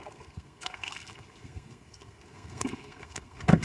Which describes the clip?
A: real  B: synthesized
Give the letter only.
B